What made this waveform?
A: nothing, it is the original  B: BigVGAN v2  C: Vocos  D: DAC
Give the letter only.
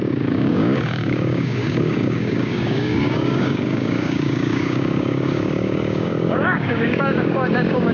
D